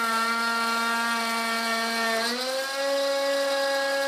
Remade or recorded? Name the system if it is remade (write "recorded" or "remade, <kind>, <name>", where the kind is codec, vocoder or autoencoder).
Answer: recorded